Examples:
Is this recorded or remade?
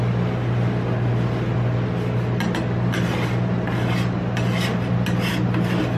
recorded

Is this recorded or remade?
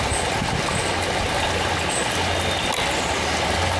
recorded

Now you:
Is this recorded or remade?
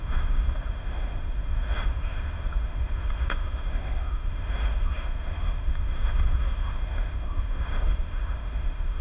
remade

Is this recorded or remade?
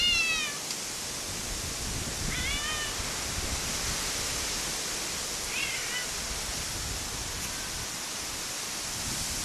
recorded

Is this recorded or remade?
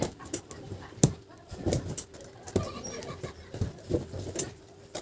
recorded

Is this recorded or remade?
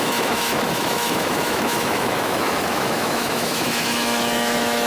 remade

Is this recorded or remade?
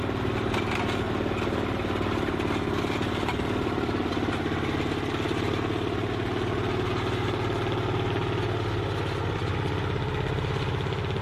recorded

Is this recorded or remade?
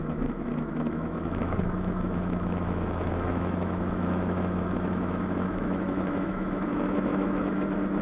remade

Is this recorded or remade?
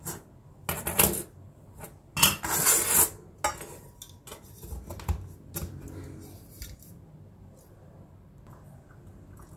recorded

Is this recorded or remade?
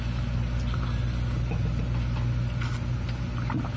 recorded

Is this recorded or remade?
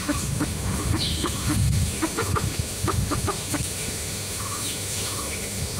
remade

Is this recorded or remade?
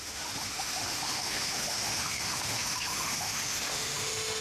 remade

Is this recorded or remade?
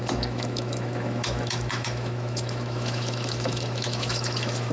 remade